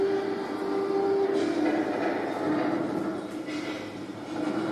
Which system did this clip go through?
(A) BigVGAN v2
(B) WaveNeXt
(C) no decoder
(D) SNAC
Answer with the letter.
C